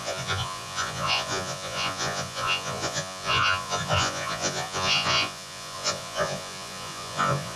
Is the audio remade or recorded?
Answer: remade